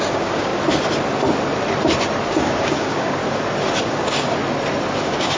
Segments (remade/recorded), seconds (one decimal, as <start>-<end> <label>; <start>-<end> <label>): 0.0-0.5 remade; 0.5-2.2 recorded; 2.2-3.2 remade; 3.2-3.8 recorded; 3.8-4.4 remade; 4.4-5.0 recorded; 5.0-5.4 remade